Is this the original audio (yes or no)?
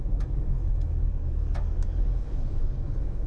no